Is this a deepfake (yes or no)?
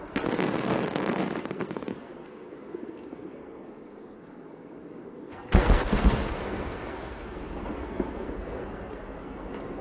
yes